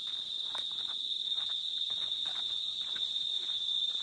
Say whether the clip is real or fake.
real